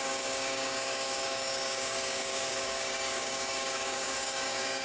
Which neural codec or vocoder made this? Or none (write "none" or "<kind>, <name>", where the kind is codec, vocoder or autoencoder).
codec, DAC